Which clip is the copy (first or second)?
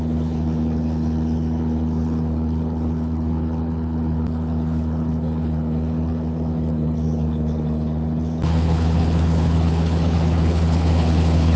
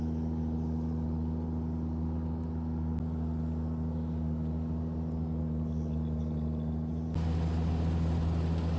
first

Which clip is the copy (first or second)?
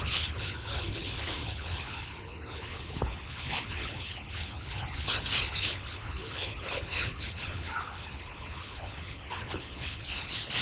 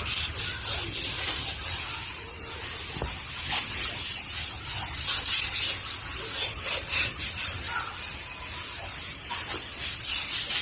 first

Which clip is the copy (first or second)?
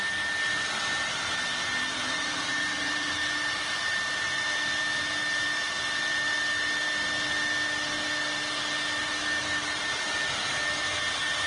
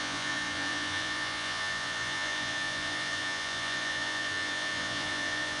second